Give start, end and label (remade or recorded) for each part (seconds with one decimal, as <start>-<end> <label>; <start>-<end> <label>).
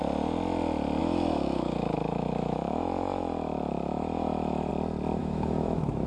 0.0-1.0 recorded; 1.0-4.7 remade; 4.7-5.2 recorded; 5.2-6.1 remade